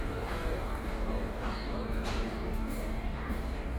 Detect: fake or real fake